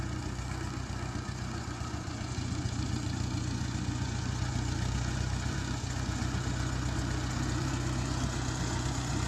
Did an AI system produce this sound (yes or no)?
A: yes